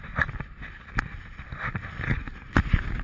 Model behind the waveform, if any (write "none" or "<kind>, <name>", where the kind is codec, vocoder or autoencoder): none